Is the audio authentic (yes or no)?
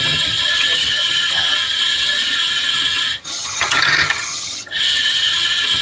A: no